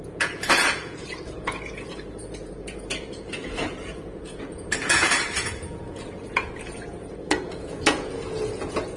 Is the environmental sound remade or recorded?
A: remade